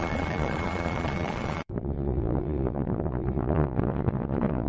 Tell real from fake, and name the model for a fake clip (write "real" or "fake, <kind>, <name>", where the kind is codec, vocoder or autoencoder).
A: fake, vocoder, Vocos